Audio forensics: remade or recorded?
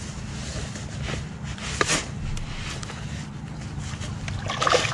recorded